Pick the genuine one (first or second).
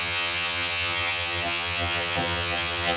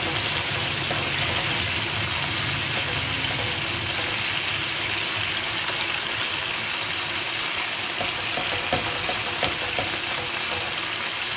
second